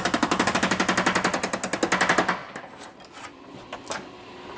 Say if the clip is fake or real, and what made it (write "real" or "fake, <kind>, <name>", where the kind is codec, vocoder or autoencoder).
real